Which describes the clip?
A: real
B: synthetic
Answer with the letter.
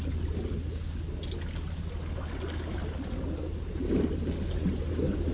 A